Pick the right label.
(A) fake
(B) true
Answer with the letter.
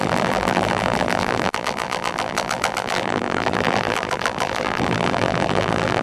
A